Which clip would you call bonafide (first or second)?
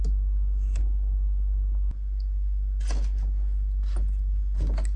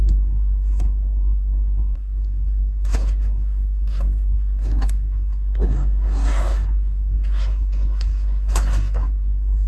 first